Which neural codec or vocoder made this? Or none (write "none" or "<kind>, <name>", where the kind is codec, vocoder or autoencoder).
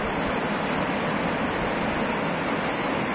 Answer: none